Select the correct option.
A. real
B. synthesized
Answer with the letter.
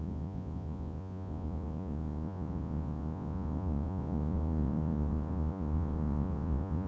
B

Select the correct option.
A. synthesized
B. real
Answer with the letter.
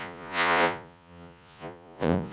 A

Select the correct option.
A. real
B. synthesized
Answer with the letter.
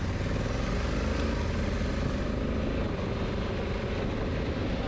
A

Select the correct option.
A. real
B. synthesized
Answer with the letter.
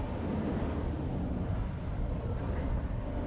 A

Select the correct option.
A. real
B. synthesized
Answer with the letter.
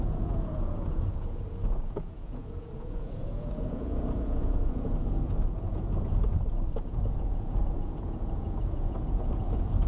B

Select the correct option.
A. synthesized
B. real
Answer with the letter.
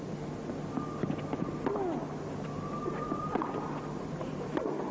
B